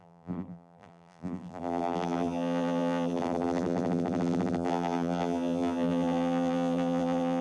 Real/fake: fake